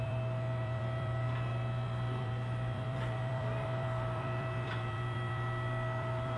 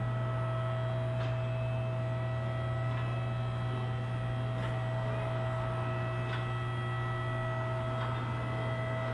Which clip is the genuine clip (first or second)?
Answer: second